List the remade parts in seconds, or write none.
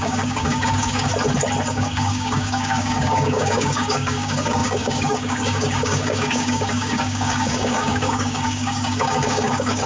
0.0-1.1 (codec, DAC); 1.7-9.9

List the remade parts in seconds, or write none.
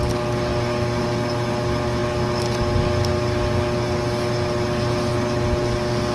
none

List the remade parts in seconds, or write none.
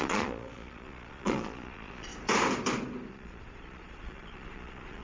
0.0-2.1 (vocoder, Vocos); 3.1-5.0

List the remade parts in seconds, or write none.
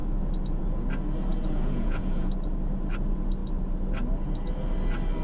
1.3-2.3 (vocoder, Vocos)